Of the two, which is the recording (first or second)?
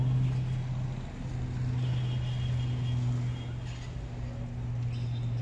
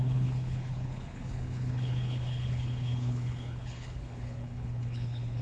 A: first